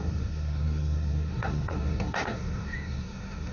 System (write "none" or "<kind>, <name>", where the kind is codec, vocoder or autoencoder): codec, SNAC